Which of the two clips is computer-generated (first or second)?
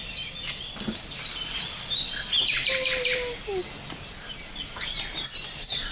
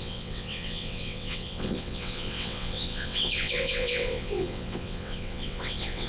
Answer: second